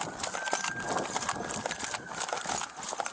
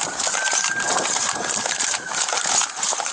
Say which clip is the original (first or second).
first